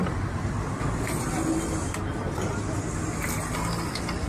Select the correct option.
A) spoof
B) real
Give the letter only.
B